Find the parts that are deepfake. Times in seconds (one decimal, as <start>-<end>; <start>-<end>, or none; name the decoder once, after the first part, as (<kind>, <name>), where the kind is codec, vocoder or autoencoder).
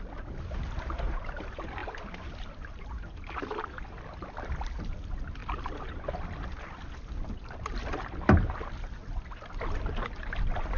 none